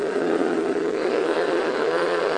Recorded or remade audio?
remade